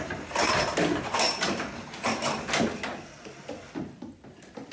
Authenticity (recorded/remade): recorded